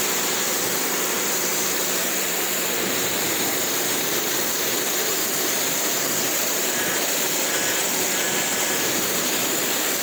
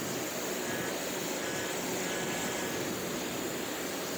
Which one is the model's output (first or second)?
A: first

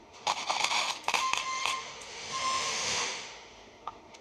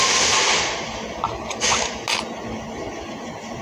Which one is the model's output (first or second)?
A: first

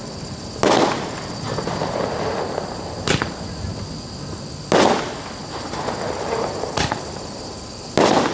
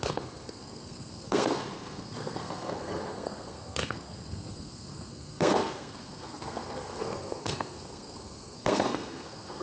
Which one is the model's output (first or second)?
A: second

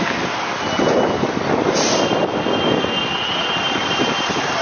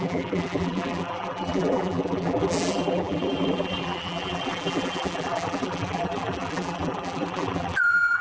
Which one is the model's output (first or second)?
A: second